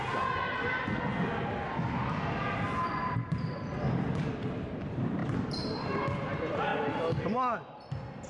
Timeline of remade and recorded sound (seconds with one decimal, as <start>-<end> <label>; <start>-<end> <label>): 0.0-5.2 recorded; 5.2-5.8 remade; 5.8-8.3 recorded